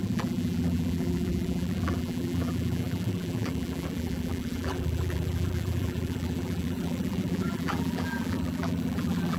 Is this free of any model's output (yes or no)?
no